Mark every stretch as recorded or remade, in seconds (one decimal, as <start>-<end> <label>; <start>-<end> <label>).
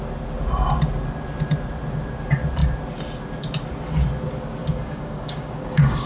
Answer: 0.0-4.6 recorded; 4.6-6.1 remade